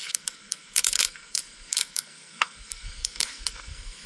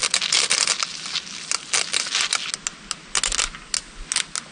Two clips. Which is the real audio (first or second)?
second